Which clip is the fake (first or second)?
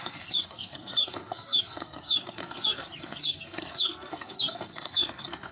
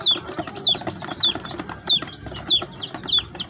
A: first